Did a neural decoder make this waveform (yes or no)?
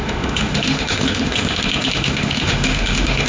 yes